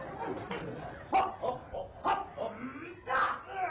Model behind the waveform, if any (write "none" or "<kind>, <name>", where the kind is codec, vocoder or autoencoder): none